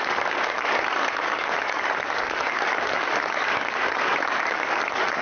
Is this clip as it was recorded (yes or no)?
no